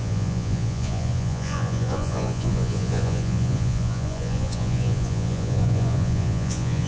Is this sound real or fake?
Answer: fake